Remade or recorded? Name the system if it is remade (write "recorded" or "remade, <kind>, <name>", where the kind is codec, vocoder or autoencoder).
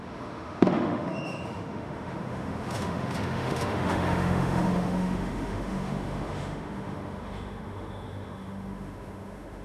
remade, autoencoder, DAC-VAE